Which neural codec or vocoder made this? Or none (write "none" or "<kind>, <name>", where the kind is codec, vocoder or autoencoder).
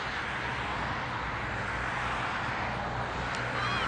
none